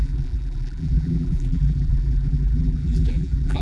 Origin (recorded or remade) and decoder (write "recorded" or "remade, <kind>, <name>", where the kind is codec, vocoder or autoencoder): remade, vocoder, BigVGAN v2